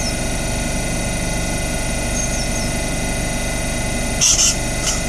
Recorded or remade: recorded